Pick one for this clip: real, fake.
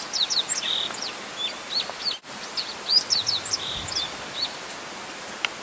real